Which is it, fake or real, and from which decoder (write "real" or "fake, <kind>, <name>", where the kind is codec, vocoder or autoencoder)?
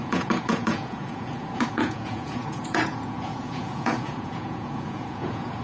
fake, vocoder, Vocos